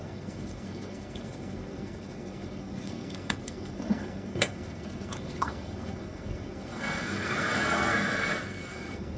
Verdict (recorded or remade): remade